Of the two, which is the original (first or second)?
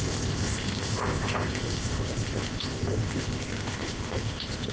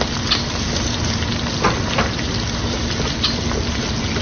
second